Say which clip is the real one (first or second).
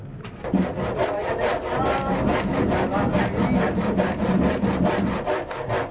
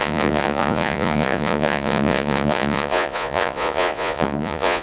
first